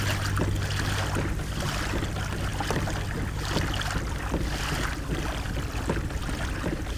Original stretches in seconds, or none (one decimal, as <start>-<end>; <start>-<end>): 0.0-7.0